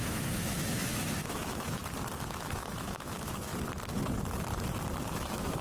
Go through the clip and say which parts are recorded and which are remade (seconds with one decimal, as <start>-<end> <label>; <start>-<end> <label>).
0.0-1.8 remade; 1.8-2.3 recorded; 2.3-3.5 remade; 3.5-5.0 recorded; 5.0-5.6 remade